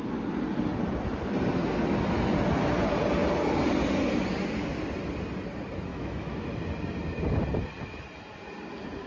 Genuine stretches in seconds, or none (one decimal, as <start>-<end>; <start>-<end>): 0.0-5.9; 6.5-9.1